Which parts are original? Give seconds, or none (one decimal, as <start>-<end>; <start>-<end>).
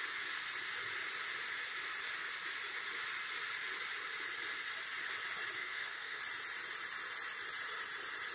0.0-5.6; 6.2-8.3